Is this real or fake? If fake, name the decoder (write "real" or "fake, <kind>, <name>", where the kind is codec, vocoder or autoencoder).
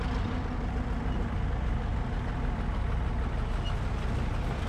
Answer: real